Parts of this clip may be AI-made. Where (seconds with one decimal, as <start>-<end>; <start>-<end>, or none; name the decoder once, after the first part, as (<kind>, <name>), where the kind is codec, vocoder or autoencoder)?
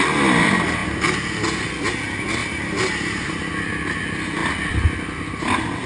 2.4-3.5 (vocoder, BigVGAN v2)